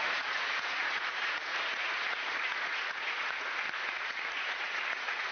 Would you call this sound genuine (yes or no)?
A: no